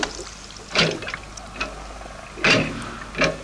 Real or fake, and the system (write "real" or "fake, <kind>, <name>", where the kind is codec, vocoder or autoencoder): real